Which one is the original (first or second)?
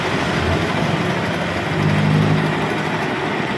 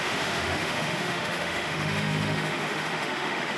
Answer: first